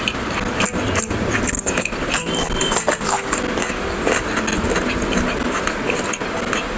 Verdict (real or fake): real